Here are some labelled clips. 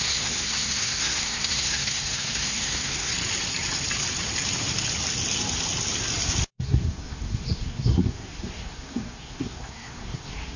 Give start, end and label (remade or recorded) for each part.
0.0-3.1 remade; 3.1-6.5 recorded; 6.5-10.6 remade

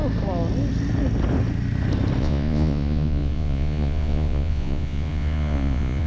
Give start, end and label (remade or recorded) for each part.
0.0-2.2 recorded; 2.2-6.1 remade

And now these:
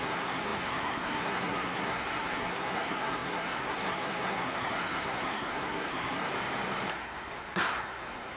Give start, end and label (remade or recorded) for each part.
0.0-6.3 remade; 6.3-6.9 recorded; 6.9-8.4 remade

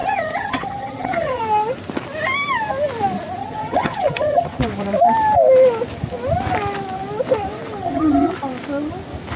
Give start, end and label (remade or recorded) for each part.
0.0-1.4 remade; 1.4-3.4 recorded; 3.4-4.6 remade; 4.6-7.8 recorded; 7.8-8.3 remade; 8.3-9.4 recorded

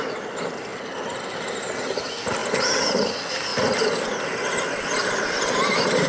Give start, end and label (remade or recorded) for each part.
0.0-2.4 recorded; 2.4-3.0 remade; 3.0-3.5 recorded; 3.5-6.1 remade

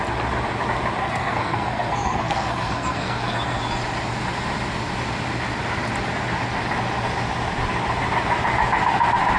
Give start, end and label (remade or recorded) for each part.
0.0-1.0 recorded; 1.0-3.6 remade; 3.6-9.4 recorded